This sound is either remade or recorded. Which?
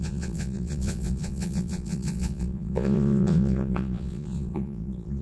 remade